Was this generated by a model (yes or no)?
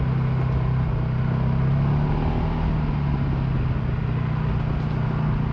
no